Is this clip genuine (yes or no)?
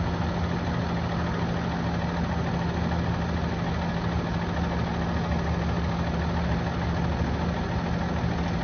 yes